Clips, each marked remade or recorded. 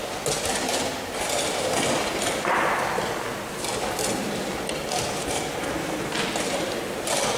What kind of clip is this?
recorded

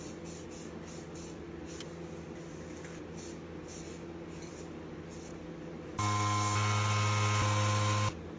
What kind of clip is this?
recorded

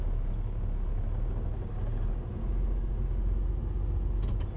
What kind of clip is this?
recorded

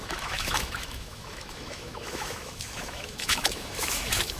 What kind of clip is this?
remade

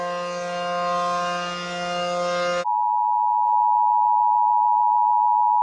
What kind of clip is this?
recorded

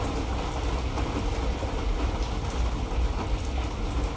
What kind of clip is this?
recorded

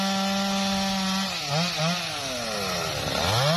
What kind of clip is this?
recorded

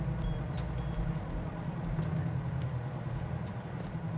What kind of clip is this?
recorded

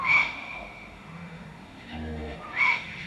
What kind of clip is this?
remade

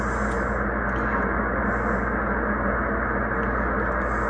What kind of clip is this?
recorded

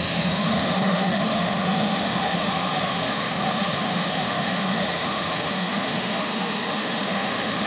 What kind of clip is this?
remade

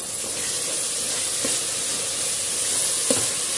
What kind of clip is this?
recorded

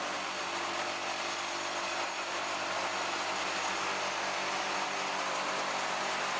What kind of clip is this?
recorded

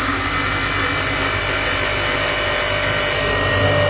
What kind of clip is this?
recorded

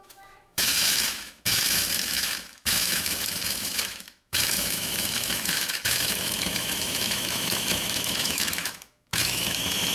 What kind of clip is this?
remade